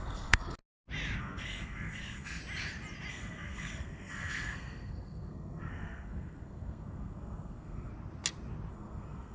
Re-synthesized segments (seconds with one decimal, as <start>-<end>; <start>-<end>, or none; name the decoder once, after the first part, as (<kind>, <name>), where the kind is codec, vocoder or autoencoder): 0.0-0.6 (codec, SNAC); 1.2-2.4; 3.1-7.9; 8.7-9.3